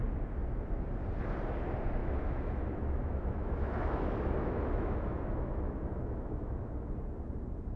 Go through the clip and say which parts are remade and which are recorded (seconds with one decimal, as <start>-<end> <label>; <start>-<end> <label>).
0.0-2.0 recorded; 2.0-6.7 remade; 6.7-7.8 recorded